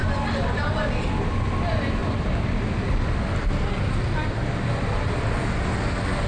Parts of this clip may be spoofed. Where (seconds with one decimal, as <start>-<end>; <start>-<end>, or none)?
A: none